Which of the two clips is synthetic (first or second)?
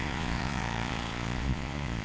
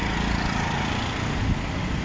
first